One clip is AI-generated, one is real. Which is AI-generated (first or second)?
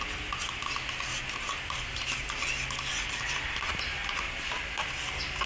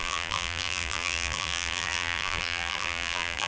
second